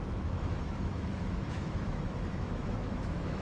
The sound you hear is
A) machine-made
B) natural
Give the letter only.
A